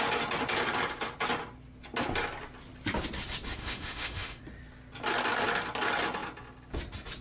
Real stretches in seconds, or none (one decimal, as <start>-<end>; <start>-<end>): 0.0-3.6; 4.4-7.2